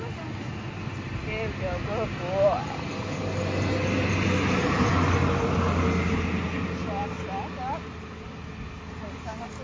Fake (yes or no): no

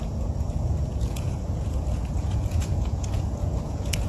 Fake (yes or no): yes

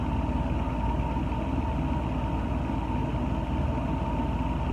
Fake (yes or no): no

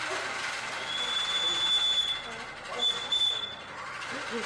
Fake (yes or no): no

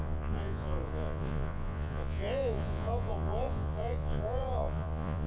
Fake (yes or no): yes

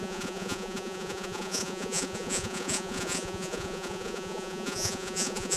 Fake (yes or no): yes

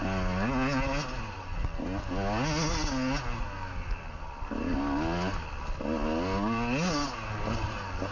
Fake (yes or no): no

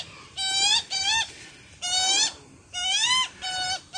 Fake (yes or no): no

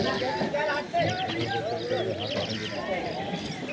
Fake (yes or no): no